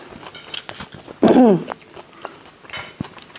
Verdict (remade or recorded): recorded